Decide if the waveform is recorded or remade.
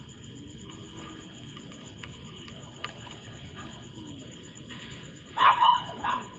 remade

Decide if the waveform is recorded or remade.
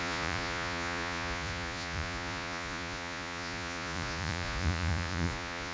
remade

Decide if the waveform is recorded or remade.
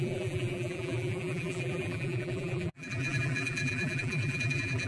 remade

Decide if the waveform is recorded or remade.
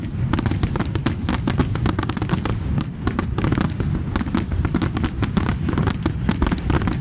recorded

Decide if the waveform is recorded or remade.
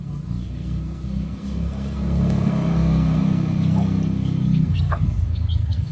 remade